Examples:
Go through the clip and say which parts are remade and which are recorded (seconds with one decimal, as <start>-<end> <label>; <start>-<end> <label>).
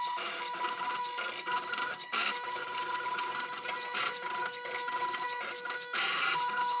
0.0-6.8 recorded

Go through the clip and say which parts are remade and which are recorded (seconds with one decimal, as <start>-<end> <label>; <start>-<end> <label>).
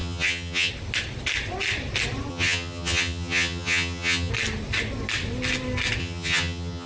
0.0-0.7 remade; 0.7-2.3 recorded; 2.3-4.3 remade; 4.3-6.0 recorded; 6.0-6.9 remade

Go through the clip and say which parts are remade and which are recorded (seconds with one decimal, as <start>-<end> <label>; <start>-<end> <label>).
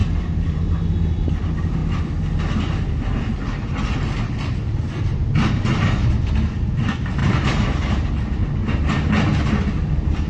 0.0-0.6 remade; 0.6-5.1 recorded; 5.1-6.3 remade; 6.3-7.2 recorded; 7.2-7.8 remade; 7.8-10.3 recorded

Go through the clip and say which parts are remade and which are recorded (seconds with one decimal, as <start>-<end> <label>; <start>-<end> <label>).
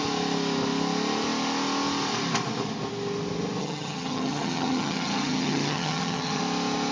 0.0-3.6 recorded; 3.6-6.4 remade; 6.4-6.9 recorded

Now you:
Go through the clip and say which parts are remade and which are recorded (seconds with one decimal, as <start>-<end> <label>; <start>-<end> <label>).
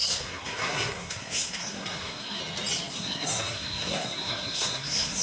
0.0-2.4 remade; 2.4-2.9 recorded; 2.9-5.2 remade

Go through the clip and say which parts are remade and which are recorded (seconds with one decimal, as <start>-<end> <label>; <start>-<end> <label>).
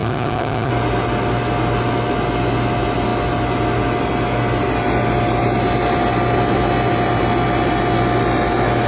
0.0-0.7 remade; 0.7-8.9 recorded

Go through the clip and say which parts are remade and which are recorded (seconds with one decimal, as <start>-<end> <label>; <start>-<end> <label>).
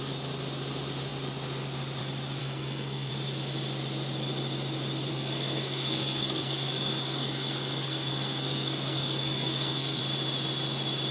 0.0-2.4 recorded; 2.4-3.1 remade; 3.1-5.1 recorded; 5.1-10.0 remade; 10.0-11.1 recorded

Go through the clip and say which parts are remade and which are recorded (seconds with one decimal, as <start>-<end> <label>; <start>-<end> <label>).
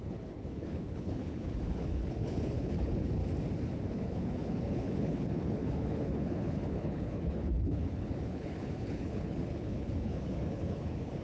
0.0-3.2 remade; 3.2-3.9 recorded; 3.9-11.2 remade